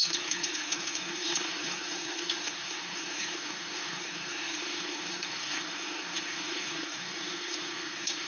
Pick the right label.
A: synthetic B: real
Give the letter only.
A